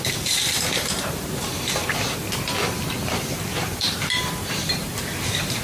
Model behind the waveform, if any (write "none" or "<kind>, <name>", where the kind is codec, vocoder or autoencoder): vocoder, BigVGAN v2